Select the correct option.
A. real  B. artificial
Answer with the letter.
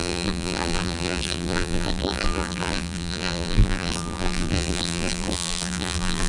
B